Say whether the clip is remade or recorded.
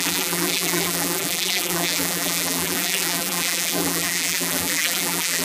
remade